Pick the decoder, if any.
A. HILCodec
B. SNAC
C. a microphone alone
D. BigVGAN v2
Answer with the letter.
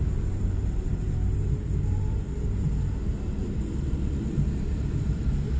D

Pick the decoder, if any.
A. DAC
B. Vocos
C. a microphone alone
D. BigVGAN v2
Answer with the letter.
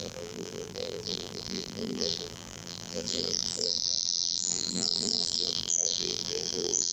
D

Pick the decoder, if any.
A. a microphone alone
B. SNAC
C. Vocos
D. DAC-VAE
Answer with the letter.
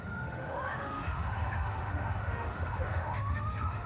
D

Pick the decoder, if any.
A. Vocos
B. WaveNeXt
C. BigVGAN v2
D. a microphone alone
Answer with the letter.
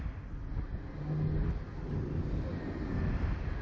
D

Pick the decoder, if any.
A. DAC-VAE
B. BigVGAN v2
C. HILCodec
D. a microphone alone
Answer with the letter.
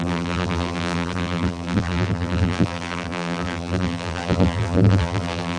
B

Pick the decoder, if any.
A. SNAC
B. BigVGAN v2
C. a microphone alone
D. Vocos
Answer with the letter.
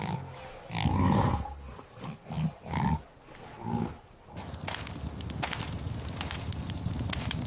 C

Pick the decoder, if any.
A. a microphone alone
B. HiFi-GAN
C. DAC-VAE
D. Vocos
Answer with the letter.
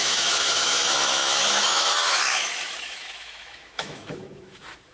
C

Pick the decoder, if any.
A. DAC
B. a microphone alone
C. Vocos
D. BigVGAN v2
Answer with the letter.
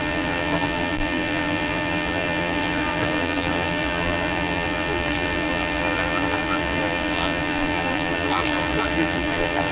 D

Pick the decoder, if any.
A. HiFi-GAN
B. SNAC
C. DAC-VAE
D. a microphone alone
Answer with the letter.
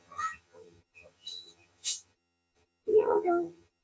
A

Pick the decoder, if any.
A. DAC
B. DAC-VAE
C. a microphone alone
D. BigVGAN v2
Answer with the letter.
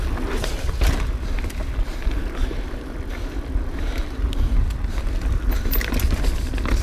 C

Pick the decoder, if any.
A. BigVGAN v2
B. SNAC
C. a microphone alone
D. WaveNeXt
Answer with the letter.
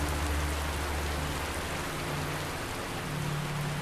C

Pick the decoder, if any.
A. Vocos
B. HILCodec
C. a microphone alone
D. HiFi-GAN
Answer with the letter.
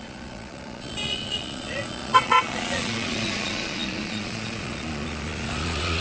A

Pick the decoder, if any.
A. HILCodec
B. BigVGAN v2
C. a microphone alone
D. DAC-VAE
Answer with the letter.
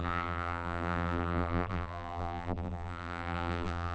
B